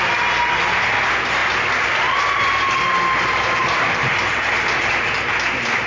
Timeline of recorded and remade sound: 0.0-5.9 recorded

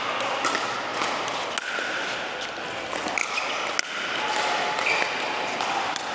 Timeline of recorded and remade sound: 0.0-6.1 recorded

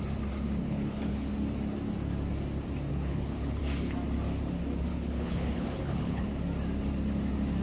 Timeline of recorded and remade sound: 0.0-0.6 recorded; 0.6-1.3 remade; 1.3-2.9 recorded; 2.9-3.6 remade; 3.6-4.9 recorded; 4.9-6.3 remade; 6.3-7.6 recorded

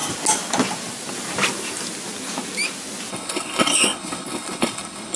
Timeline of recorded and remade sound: 0.0-3.1 recorded; 3.1-5.2 remade

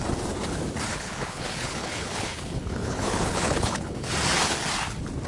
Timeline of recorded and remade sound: 0.0-0.9 recorded; 0.9-4.1 remade; 4.1-5.3 recorded

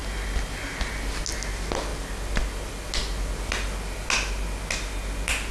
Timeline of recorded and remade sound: 0.0-5.5 recorded

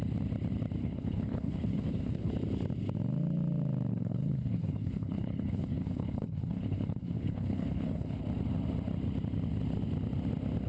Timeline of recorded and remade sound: 0.0-0.8 recorded; 0.8-2.3 remade; 2.3-3.9 recorded; 3.9-8.2 remade; 8.2-10.7 recorded